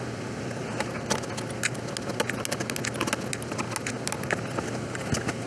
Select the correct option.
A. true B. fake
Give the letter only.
A